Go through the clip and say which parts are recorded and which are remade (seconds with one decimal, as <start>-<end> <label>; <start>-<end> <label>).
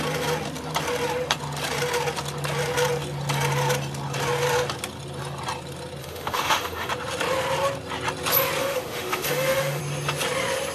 0.0-6.0 recorded; 6.0-6.9 remade; 6.9-8.6 recorded; 8.6-9.8 remade; 9.8-10.7 recorded